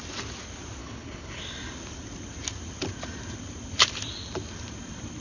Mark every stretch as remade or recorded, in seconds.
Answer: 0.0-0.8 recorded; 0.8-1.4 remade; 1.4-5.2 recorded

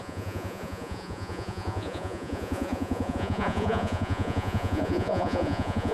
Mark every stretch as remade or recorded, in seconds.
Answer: 0.0-5.9 remade

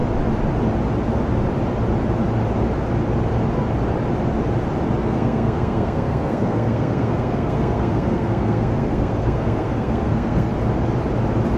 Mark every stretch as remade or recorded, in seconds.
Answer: 0.0-5.0 recorded; 5.0-10.5 remade; 10.5-11.6 recorded

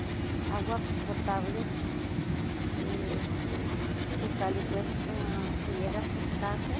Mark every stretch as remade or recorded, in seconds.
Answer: 0.0-1.8 recorded; 1.8-2.6 remade; 2.6-6.8 recorded

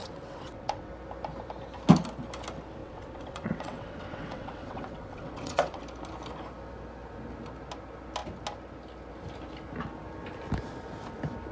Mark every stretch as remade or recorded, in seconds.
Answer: 0.0-0.9 remade; 0.9-2.8 recorded; 2.8-5.8 remade; 5.8-11.5 recorded

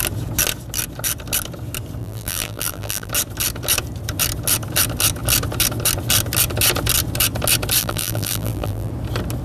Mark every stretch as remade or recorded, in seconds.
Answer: 0.0-2.0 recorded; 2.0-3.1 remade; 3.1-7.8 recorded; 7.8-8.9 remade; 8.9-9.4 recorded

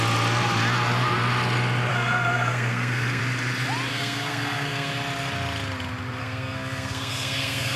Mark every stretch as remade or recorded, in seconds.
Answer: 0.0-1.9 recorded; 1.9-3.2 remade; 3.2-3.9 recorded; 3.9-4.9 remade; 4.9-6.2 recorded; 6.2-7.8 remade

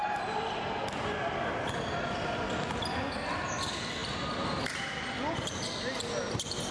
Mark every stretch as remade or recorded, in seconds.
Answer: 0.0-6.7 recorded